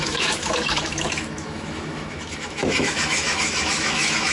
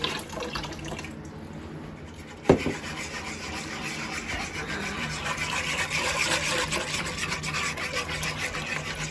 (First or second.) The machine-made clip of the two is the first